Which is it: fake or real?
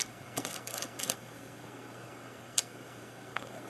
fake